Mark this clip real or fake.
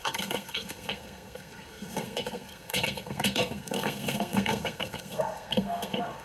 fake